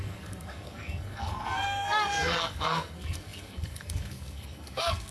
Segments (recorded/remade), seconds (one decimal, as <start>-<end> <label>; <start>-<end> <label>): 0.0-5.1 remade